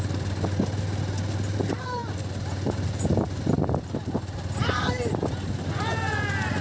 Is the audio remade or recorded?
recorded